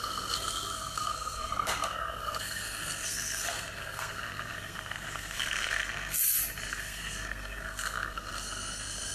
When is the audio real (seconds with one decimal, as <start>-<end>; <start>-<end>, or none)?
6.2-6.7